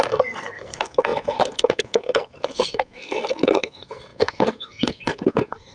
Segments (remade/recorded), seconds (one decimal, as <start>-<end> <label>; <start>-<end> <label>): 0.0-5.7 remade